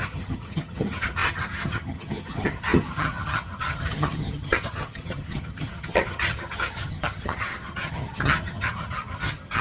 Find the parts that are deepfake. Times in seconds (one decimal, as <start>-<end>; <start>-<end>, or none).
0.0-9.6